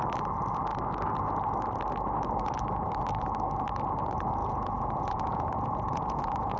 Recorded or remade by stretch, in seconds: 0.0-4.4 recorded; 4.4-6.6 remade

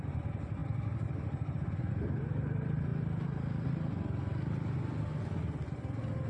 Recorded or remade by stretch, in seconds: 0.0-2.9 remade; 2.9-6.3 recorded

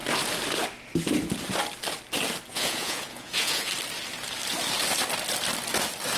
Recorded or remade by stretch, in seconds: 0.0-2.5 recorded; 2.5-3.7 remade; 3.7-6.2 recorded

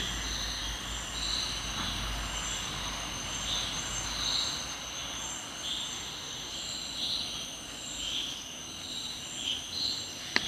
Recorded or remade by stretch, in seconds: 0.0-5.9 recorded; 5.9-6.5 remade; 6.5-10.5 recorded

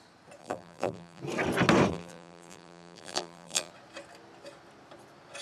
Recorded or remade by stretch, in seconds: 0.0-0.4 recorded; 0.4-1.2 remade; 1.2-1.9 recorded; 1.9-3.7 remade; 3.7-5.4 recorded

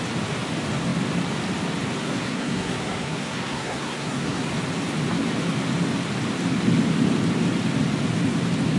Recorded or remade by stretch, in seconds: 0.0-2.0 recorded; 2.0-4.5 remade; 4.5-8.8 recorded

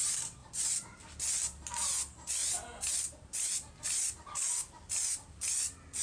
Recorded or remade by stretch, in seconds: 0.0-0.4 recorded; 0.4-1.1 remade; 1.1-2.4 recorded; 2.4-3.7 remade; 3.7-6.0 recorded

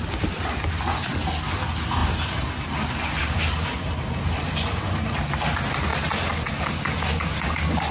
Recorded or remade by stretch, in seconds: 0.0-7.9 recorded